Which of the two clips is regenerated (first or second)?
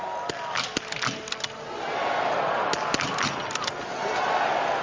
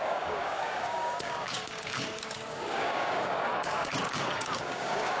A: second